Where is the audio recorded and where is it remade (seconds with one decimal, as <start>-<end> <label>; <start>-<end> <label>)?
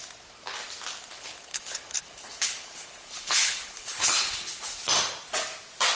0.0-1.1 recorded; 1.1-4.7 remade; 4.7-6.0 recorded